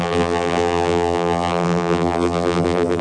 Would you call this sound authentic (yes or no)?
no